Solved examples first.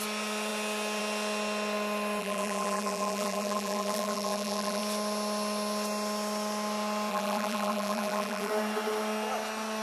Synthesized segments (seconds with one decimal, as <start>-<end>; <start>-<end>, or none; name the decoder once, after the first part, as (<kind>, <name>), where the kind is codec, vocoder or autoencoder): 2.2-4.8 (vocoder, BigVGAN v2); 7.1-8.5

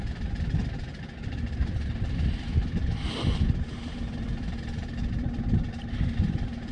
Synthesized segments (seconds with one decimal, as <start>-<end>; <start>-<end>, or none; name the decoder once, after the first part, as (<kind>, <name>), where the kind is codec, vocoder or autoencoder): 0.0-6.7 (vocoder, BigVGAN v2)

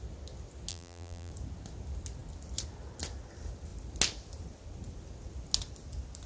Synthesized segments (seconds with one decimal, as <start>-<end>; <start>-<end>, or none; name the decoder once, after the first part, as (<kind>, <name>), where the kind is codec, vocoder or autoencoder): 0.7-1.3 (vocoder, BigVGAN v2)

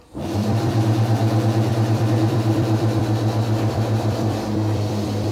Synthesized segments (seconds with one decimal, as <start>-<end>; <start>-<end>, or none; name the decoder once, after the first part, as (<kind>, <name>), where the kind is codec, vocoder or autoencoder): 0.0-1.2 (vocoder, BigVGAN v2); 1.7-3.0; 3.7-5.3